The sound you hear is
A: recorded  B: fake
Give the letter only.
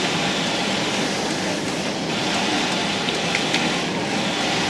A